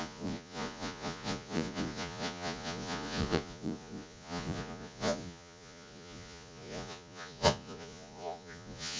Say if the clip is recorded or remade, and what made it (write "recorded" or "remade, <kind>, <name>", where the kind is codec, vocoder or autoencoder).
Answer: remade, vocoder, Vocos